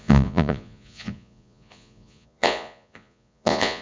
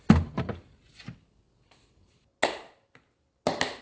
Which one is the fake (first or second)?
first